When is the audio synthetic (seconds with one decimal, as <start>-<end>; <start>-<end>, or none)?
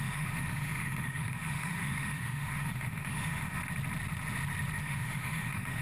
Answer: 0.0-3.6; 4.8-5.8